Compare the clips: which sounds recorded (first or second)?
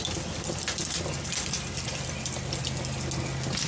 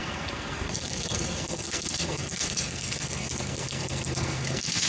first